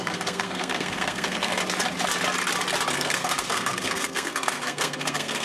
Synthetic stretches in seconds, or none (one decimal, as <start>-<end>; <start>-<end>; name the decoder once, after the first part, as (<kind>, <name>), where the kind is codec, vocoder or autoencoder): 0.0-1.6 (codec, SNAC); 2.9-5.4